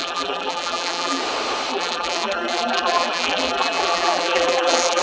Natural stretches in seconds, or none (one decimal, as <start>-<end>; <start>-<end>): 1.2-1.7